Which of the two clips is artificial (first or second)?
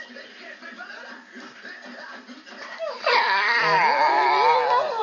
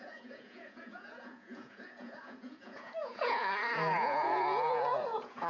second